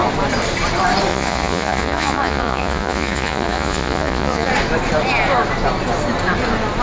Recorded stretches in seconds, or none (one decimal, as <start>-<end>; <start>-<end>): 0.0-1.1; 4.5-6.8